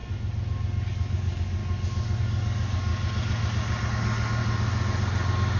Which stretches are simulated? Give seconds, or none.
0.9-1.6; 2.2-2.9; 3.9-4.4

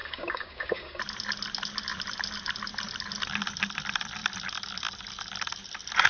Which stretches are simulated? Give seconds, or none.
0.0-1.0

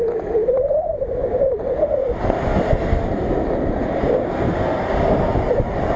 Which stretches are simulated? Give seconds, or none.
none

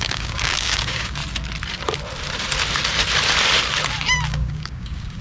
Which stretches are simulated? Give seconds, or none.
0.0-1.2; 4.3-5.2

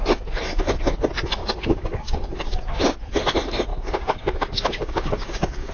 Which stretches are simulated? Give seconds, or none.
1.4-2.8; 3.7-5.7

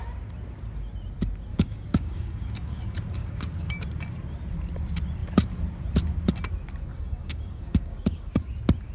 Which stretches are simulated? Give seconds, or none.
1.5-2.8; 3.2-3.8; 6.9-8.5